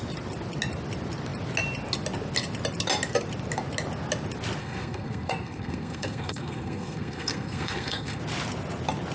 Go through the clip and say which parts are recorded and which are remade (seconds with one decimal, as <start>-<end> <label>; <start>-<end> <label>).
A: 0.0-4.6 recorded; 4.6-8.2 remade; 8.2-9.1 recorded